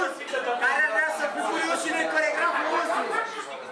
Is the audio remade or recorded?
recorded